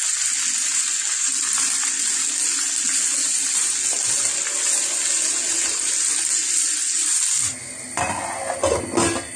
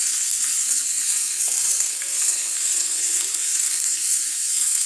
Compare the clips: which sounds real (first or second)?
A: first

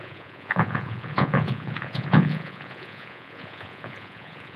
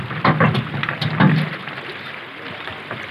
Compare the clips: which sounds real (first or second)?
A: second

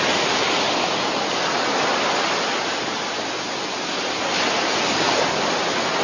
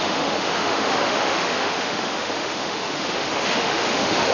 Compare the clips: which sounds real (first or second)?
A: first